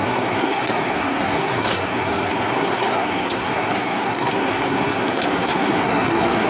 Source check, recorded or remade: remade